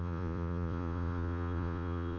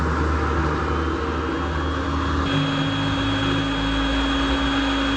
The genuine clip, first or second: second